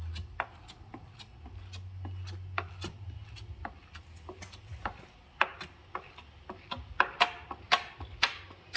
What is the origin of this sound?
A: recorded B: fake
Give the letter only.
A